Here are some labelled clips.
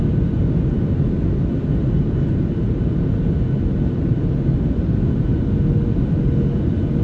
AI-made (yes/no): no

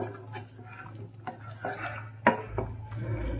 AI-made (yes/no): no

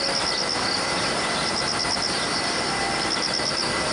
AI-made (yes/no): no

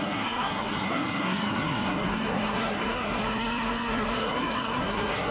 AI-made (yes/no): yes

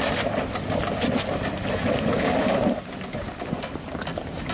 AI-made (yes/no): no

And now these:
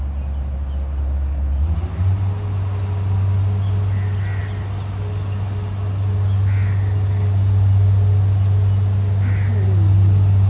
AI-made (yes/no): no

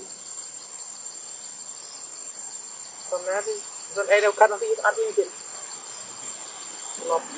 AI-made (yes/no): no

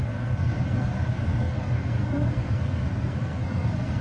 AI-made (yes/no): yes